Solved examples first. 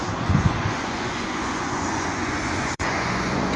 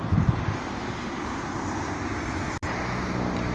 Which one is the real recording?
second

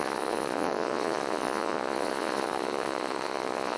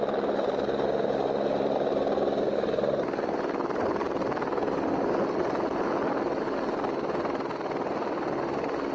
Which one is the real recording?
second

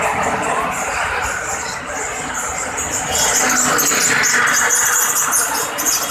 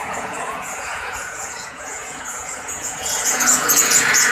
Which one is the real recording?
first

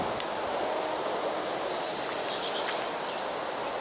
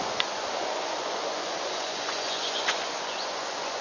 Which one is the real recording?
first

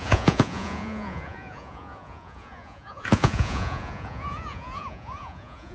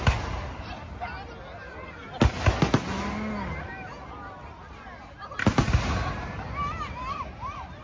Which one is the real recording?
second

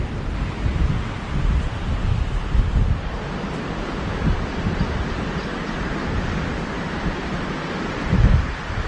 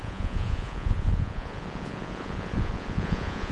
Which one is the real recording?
first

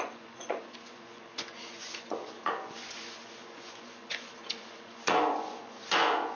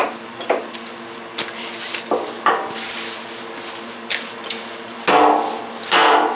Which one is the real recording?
second